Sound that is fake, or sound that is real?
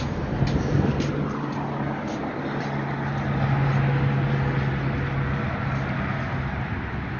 real